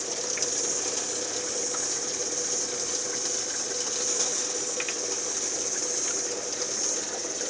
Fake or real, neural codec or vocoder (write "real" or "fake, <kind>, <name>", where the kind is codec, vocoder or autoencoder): real